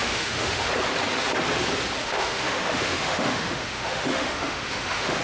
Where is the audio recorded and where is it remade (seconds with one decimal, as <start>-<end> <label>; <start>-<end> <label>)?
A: 0.0-0.7 remade; 0.7-2.0 recorded; 2.0-5.2 remade